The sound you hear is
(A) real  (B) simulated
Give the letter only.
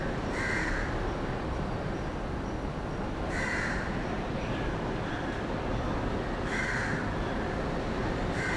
A